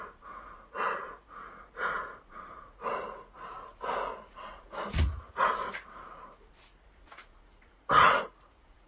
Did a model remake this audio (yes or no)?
yes